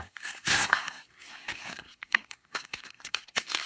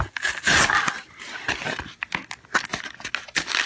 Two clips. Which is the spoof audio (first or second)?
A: first